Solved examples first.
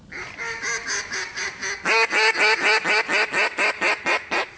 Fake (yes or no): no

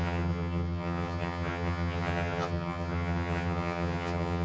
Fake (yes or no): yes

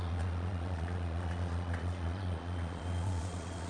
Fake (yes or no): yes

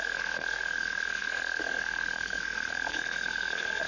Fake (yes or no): yes